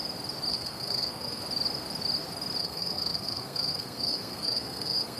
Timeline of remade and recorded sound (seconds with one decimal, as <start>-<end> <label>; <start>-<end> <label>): 0.0-0.5 recorded; 0.5-1.4 remade; 1.4-2.6 recorded; 2.6-5.2 remade